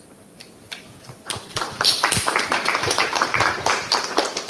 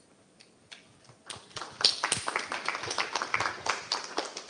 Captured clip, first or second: second